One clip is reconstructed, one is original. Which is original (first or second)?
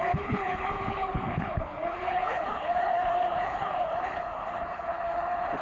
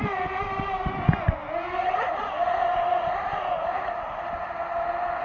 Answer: second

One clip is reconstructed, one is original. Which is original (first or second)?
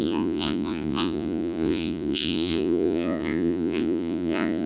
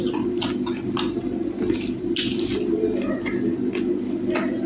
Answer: second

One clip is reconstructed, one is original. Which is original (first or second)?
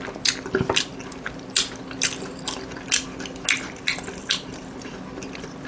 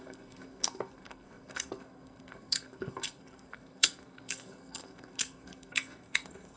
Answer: first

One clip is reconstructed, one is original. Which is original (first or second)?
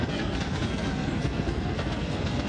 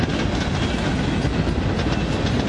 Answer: second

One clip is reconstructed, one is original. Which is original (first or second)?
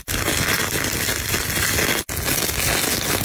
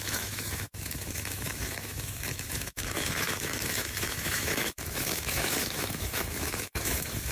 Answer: first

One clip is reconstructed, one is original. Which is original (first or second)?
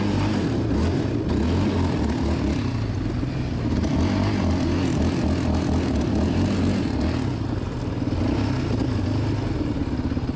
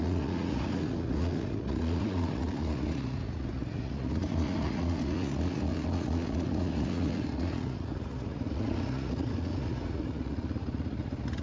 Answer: first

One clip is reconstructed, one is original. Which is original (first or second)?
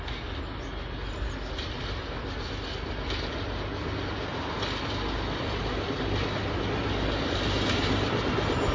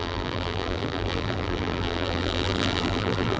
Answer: first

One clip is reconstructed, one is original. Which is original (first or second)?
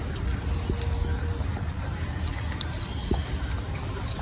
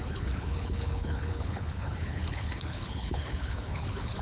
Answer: first